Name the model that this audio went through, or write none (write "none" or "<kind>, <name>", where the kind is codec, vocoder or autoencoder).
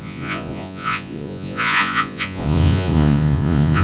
vocoder, Vocos